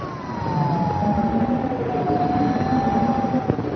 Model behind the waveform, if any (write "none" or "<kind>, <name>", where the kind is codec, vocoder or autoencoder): none